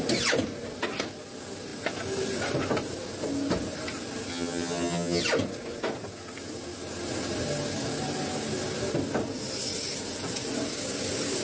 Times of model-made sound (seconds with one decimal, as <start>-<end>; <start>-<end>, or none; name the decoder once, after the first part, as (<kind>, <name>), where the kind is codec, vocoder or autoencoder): 4.3-5.2 (vocoder, HiFi-GAN)